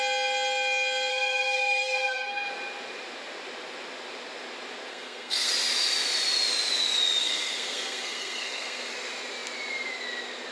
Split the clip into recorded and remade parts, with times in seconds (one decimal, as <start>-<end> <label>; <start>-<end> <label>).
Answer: 0.0-1.1 recorded; 1.1-2.5 remade; 2.5-4.9 recorded; 4.9-5.5 remade; 5.5-7.2 recorded; 7.2-8.9 remade; 8.9-10.5 recorded